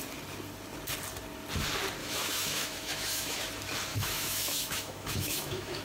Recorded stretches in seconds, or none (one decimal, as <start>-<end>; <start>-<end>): 0.0-2.0; 3.4-3.9